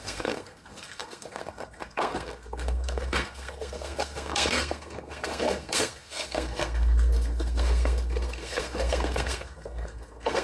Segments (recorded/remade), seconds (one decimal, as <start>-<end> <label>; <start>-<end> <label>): 0.0-10.4 remade